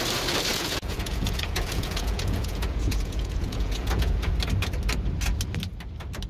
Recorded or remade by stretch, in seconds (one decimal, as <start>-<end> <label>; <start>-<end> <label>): 0.0-0.5 recorded; 0.5-4.3 remade; 4.3-6.3 recorded